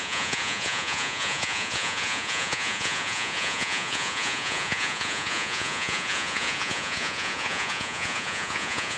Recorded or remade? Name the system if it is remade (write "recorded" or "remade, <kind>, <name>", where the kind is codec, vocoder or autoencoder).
remade, vocoder, Vocos